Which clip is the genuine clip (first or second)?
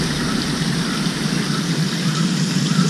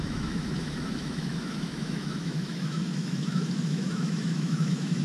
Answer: first